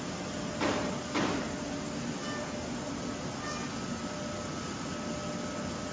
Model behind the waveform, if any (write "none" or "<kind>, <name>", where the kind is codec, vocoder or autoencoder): none